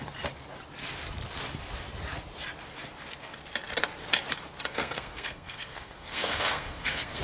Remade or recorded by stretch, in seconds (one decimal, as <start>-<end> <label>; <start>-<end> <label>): 0.0-4.7 recorded; 4.7-7.2 remade